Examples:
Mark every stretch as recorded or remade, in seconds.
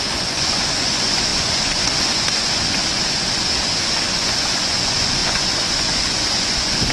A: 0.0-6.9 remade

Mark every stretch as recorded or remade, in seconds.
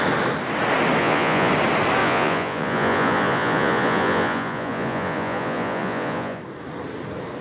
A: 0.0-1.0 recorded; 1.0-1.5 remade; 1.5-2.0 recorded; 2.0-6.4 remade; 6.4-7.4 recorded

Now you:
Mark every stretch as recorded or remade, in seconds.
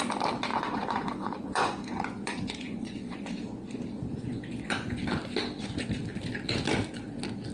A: 0.0-0.5 recorded; 0.5-5.0 remade; 5.0-7.5 recorded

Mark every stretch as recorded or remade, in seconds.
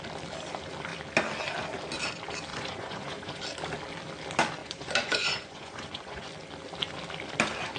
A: 0.0-2.5 recorded; 2.5-3.4 remade; 3.4-4.6 recorded; 4.6-6.3 remade; 6.3-7.8 recorded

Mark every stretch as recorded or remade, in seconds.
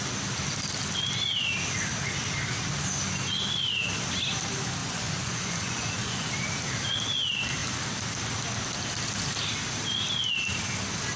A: 0.0-4.8 recorded; 4.8-6.3 remade; 6.3-11.2 recorded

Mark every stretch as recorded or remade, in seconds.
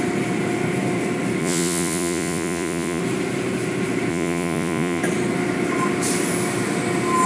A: 0.0-1.4 recorded; 1.4-3.0 remade; 3.0-4.1 recorded; 4.1-5.0 remade; 5.0-7.3 recorded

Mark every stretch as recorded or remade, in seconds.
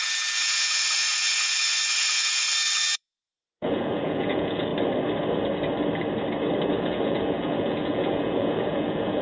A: 0.0-4.7 remade; 4.7-6.7 recorded; 6.7-9.2 remade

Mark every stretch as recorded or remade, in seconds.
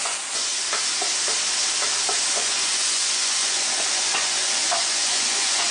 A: 0.0-0.5 remade; 0.5-2.3 recorded; 2.3-5.7 remade